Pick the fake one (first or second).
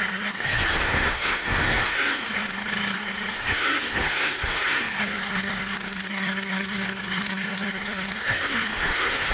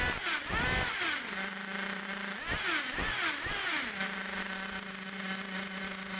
first